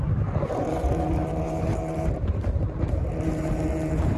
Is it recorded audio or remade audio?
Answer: remade